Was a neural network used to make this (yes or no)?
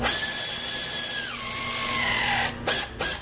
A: no